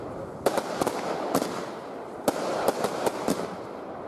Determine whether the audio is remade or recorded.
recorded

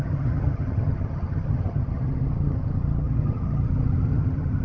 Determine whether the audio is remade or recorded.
remade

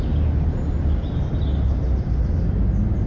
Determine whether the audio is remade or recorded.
recorded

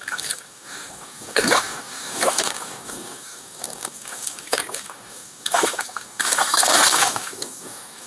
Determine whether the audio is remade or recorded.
remade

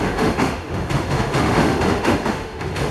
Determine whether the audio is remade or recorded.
remade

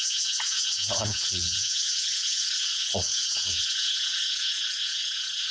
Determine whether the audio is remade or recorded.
remade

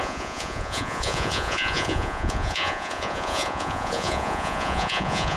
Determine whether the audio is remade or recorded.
remade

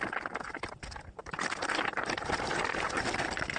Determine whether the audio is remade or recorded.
remade